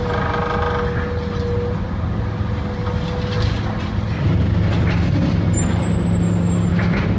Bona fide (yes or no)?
yes